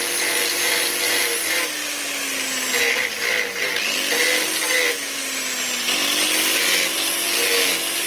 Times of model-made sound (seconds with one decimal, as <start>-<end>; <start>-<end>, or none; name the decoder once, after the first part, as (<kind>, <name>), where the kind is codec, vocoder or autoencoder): none